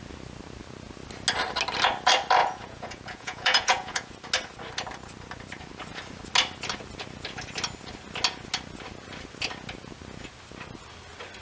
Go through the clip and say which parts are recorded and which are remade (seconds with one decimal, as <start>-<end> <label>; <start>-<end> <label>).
0.0-2.4 recorded; 2.4-4.1 remade; 4.1-11.4 recorded